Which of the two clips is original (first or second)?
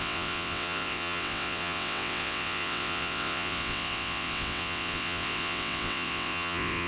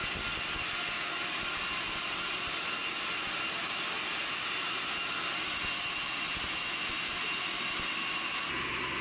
second